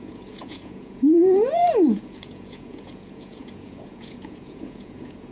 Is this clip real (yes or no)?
no